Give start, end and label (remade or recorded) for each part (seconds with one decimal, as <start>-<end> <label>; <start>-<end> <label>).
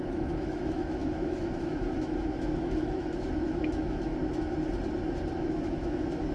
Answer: 0.0-4.1 remade; 4.1-5.4 recorded; 5.4-6.3 remade